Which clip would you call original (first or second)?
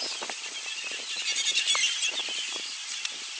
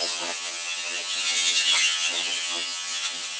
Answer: first